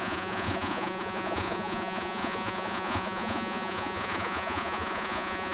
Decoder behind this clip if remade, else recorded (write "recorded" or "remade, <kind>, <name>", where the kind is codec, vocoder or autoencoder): remade, vocoder, Vocos